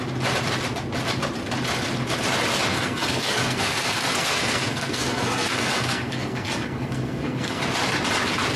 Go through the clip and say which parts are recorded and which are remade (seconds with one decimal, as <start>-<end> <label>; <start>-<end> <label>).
0.0-2.7 recorded; 2.7-7.6 remade; 7.6-8.6 recorded